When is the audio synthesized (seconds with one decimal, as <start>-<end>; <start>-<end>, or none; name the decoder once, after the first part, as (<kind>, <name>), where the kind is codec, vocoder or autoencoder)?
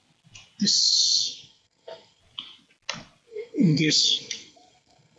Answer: 0.8-2.2 (codec, SNAC); 3.3-5.2